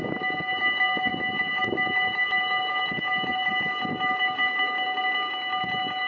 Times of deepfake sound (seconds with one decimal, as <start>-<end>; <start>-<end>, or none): none